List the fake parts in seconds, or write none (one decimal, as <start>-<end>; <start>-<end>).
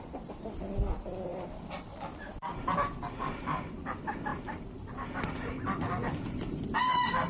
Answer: 0.0-7.3